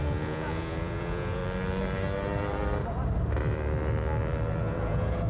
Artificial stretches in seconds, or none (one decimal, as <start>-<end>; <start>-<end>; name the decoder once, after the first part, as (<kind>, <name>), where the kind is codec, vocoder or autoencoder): 0.0-1.4 (vocoder, Vocos); 4.6-5.3